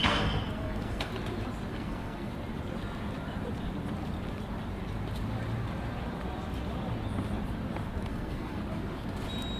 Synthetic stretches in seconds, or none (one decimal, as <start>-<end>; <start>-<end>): 0.0-1.1; 1.7-2.3; 8.1-8.6